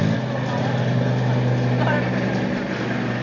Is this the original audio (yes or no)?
yes